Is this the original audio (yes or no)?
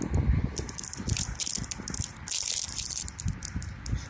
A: yes